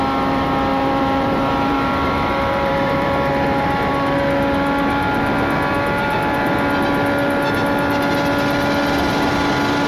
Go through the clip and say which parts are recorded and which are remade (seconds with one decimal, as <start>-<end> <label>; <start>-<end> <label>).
0.0-0.7 recorded; 0.7-3.3 remade; 3.3-9.9 recorded